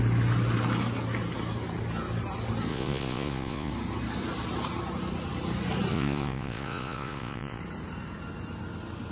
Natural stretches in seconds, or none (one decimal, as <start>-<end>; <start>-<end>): 0.0-2.7; 3.7-5.9; 7.6-9.1